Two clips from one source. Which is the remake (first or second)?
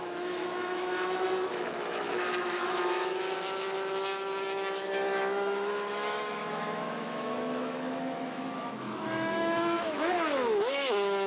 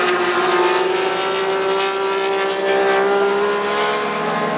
first